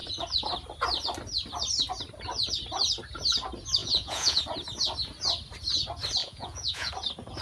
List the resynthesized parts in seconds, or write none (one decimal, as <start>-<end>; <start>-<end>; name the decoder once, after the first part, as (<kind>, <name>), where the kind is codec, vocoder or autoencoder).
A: 3.8-4.4 (vocoder, Vocos); 6.2-6.9